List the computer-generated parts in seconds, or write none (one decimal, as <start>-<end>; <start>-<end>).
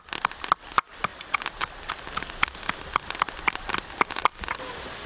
none